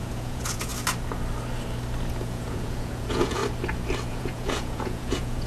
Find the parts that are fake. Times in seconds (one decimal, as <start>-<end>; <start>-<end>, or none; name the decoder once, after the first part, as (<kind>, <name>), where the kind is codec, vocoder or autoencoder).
0.0-0.7 (vocoder, Vocos); 2.2-3.4; 4.1-5.5